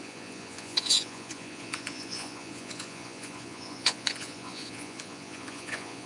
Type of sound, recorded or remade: remade